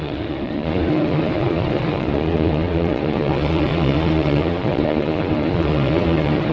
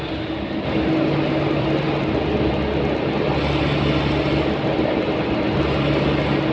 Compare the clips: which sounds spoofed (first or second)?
first